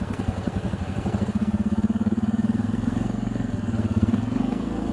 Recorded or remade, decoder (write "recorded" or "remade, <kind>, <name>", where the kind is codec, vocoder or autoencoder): remade, codec, SNAC